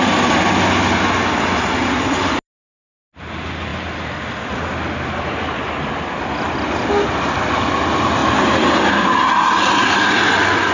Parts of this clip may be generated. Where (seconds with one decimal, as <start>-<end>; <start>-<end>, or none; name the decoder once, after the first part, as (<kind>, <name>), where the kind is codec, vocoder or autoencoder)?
none